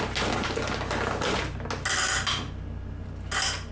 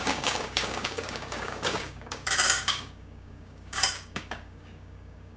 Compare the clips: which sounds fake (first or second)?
second